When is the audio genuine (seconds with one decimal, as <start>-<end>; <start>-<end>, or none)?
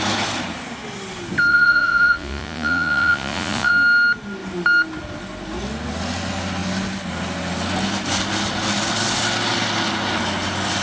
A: 0.0-1.5; 3.7-10.8